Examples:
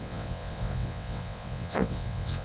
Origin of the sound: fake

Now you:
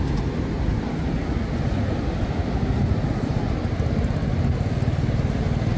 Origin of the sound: real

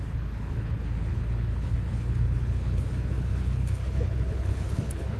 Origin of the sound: fake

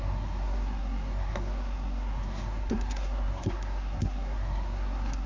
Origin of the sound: fake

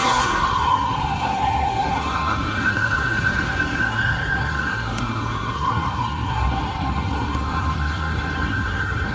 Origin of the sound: fake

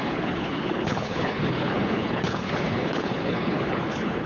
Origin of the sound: fake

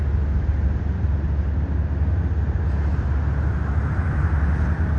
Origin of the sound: real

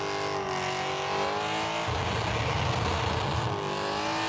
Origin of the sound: real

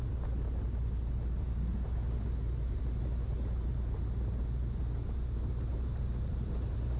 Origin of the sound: real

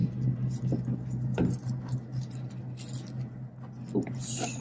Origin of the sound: real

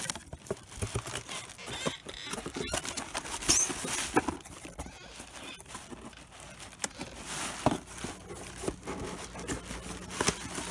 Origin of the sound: real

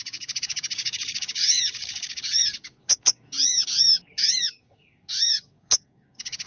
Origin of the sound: fake